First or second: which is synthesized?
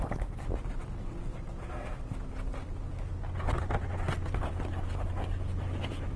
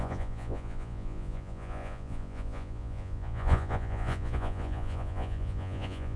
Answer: second